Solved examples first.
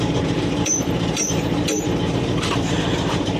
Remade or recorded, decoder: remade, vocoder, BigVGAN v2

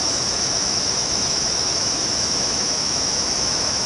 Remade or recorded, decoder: remade, autoencoder, DAC-VAE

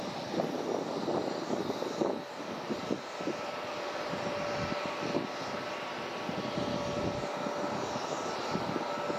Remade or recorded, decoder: recorded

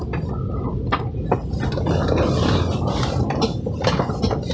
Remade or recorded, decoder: recorded